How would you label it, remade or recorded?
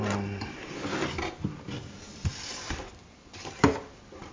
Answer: recorded